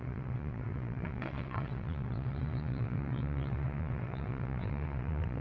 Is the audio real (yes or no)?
no